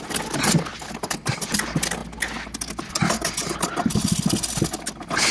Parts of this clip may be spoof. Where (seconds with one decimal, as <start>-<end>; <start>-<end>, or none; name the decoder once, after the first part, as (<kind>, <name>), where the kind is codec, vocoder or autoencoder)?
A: none